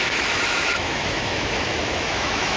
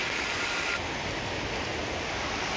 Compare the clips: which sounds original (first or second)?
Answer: second